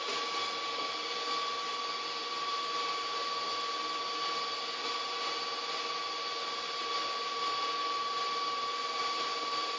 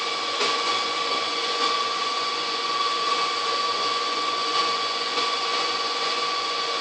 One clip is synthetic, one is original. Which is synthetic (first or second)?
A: second